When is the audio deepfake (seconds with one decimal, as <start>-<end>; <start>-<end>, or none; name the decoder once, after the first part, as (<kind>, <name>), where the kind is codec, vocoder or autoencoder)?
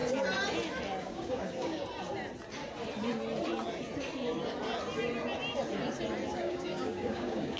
1.0-1.8 (codec, DAC); 6.3-7.6